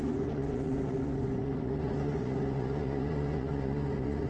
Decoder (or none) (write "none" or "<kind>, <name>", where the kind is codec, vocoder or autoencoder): vocoder, Vocos